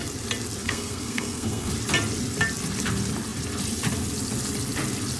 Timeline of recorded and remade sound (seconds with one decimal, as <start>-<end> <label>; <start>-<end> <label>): 0.0-0.6 recorded; 0.6-1.7 remade; 1.7-5.2 recorded